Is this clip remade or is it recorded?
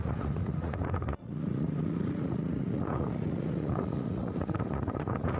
remade